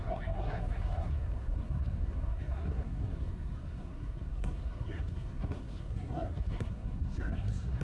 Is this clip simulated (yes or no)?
yes